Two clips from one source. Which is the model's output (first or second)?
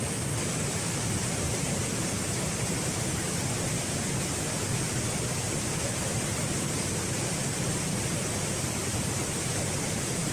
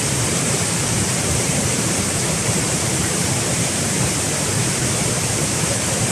second